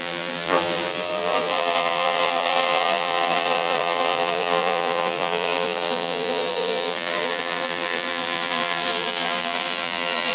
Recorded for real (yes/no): no